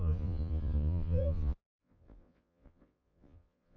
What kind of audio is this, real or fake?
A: fake